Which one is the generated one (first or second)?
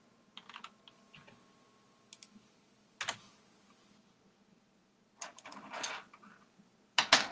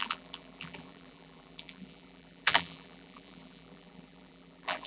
second